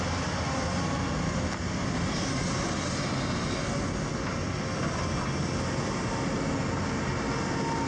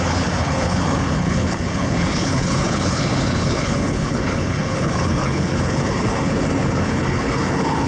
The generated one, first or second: second